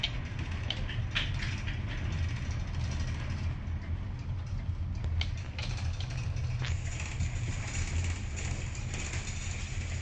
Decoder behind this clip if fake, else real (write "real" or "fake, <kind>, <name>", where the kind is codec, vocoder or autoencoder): real